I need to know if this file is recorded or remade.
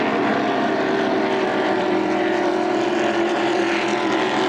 remade